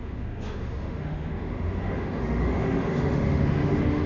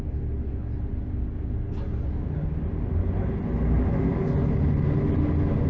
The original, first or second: second